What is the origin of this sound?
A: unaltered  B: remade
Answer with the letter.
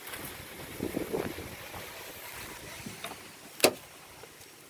A